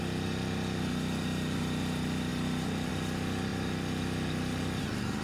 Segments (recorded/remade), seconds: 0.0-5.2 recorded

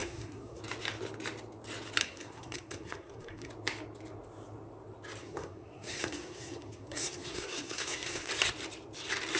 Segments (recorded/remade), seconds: 0.0-0.6 remade; 0.6-2.0 recorded; 2.0-3.5 remade; 3.5-5.2 recorded; 5.2-8.3 remade; 8.3-9.4 recorded

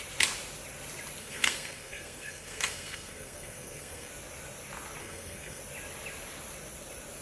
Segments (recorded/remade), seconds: 0.0-1.2 recorded; 1.2-4.1 remade; 4.1-5.0 recorded; 5.0-5.6 remade; 5.6-7.2 recorded

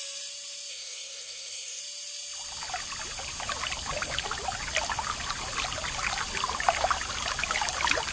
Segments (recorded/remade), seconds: 0.0-0.7 recorded; 0.7-1.8 remade; 1.8-8.1 recorded